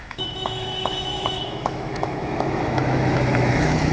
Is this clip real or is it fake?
fake